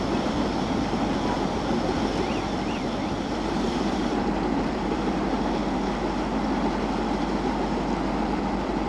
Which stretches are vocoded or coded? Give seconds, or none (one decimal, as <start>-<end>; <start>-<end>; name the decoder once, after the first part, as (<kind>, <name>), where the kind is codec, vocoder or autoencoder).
0.0-5.6 (vocoder, BigVGAN v2); 8.1-8.9